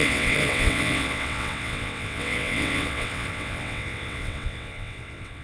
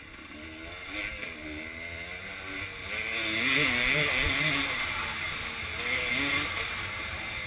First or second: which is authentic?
second